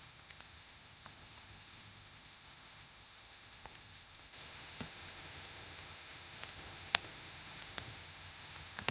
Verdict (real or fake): fake